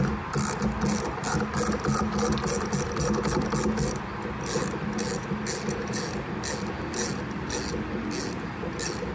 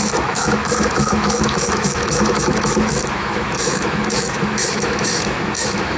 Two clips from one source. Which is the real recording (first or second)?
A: first